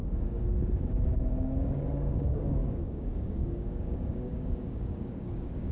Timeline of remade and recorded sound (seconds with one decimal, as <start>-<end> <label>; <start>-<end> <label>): 0.0-5.7 remade